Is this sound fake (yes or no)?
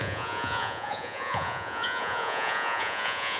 yes